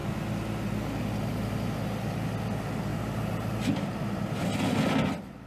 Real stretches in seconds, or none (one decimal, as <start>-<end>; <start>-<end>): 0.0-2.9; 3.7-5.5